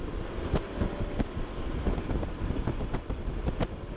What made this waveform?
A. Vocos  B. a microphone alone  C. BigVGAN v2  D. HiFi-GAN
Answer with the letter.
B